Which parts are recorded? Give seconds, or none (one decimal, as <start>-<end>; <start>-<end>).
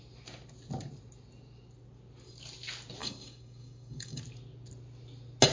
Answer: 0.0-3.0; 4.2-5.5